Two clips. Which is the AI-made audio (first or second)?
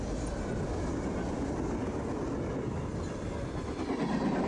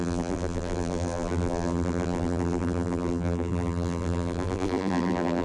second